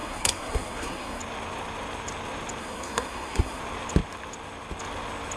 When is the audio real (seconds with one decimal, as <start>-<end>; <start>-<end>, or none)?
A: 1.2-2.6; 3.6-5.4